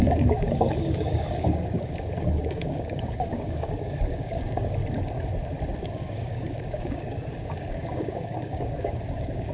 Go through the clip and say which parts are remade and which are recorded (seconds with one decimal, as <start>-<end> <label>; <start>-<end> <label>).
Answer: 0.0-4.8 remade; 4.8-5.8 recorded; 5.8-9.5 remade